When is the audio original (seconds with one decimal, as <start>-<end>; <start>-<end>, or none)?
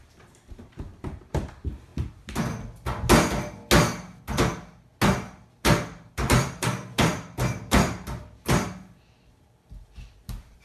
1.9-6.1